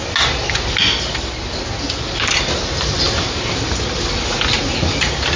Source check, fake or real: real